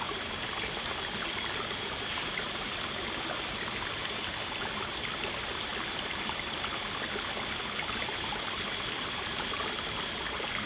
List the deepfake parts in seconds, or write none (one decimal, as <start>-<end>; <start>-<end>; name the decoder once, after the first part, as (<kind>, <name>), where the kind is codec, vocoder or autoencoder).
5.7-6.8 (vocoder, BigVGAN v2)